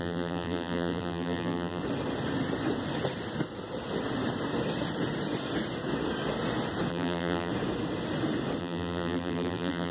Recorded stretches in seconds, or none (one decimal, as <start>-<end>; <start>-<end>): 1.8-6.9; 7.5-8.6